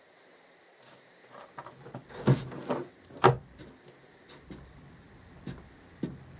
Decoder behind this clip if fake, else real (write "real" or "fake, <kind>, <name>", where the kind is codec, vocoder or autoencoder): real